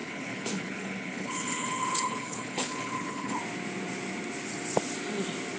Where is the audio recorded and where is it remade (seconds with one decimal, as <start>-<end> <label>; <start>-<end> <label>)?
0.0-3.4 remade; 3.4-5.6 recorded